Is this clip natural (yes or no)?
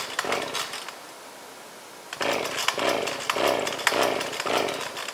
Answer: yes